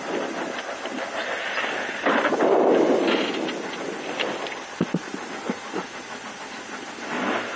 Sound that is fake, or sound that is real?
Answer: fake